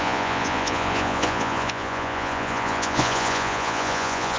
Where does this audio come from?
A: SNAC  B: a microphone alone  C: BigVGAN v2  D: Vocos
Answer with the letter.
D